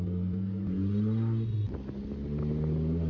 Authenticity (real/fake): real